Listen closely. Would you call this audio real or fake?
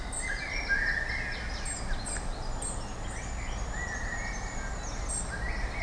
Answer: real